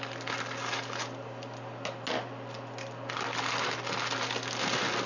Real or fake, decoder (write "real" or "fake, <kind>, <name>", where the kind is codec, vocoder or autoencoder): real